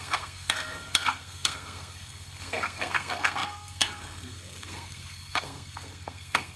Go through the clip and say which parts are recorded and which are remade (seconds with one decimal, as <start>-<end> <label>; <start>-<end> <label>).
0.0-6.6 remade